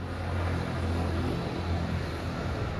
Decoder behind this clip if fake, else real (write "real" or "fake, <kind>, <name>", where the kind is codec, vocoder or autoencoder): real